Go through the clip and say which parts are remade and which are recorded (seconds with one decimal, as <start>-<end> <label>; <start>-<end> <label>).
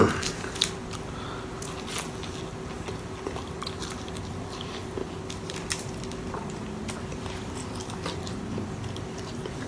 0.0-9.7 recorded